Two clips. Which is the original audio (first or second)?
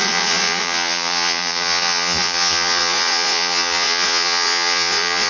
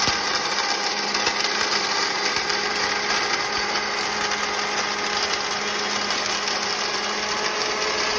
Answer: second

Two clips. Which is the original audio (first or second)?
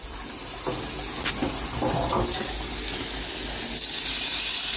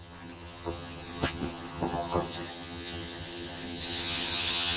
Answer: first